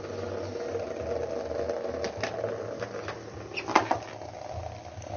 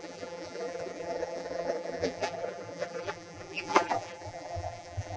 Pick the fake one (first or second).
second